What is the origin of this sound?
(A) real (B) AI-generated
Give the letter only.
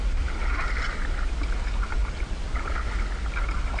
A